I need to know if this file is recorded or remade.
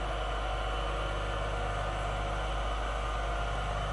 recorded